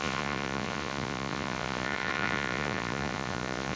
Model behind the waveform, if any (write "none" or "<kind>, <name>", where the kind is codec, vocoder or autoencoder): vocoder, Vocos